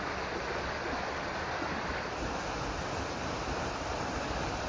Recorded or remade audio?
recorded